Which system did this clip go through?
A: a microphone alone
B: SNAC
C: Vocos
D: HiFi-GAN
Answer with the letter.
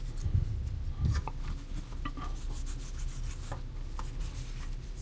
A